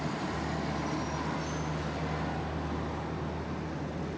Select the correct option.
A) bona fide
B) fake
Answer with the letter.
A